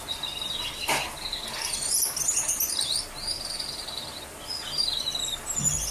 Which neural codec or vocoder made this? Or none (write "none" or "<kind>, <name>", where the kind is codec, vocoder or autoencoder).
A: none